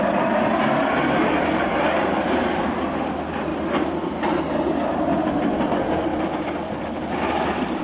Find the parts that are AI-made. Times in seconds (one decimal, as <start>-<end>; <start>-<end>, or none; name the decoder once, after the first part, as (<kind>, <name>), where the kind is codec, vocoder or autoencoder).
none